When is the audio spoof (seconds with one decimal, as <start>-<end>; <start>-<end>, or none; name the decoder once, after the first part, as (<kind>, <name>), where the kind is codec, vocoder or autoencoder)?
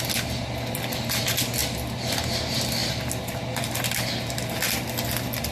none